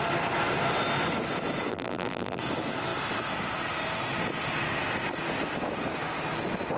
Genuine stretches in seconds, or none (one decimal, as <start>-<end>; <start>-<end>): 0.0-1.7; 2.4-6.8